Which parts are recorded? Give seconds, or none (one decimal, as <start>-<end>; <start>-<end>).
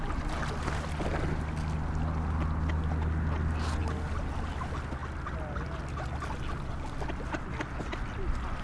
0.0-8.6